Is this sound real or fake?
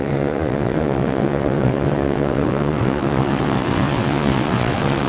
fake